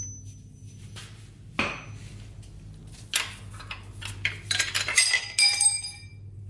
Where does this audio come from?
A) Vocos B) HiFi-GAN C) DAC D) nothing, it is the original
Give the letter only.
D